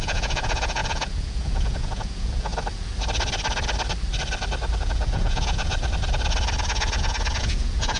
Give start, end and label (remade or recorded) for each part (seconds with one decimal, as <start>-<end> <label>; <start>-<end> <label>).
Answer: 0.0-2.5 remade; 2.5-4.8 recorded; 4.8-5.7 remade; 5.7-6.6 recorded; 6.6-8.0 remade